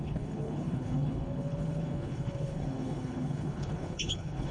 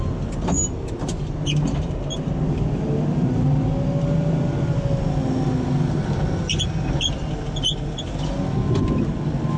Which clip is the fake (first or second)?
first